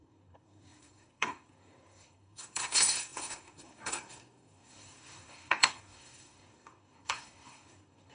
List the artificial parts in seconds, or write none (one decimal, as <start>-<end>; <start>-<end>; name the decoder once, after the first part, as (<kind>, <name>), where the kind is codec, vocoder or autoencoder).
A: 0.0-8.1 (codec, SNAC)